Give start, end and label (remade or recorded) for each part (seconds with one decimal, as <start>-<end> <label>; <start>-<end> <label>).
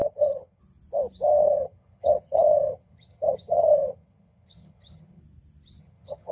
0.0-0.6 remade; 0.6-1.4 recorded; 1.4-5.2 remade; 5.2-5.8 recorded; 5.8-6.3 remade